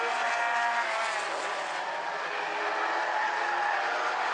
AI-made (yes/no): no